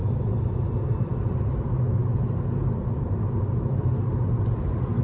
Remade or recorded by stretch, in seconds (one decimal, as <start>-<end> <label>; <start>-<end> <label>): 0.0-5.0 recorded